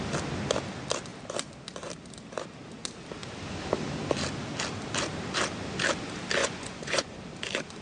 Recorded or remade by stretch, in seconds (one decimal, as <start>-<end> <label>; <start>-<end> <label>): 0.0-6.4 recorded; 6.4-7.2 remade; 7.2-7.8 recorded